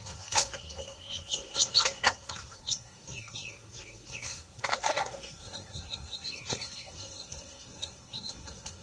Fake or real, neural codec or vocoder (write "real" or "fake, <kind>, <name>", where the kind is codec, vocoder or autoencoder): fake, codec, SNAC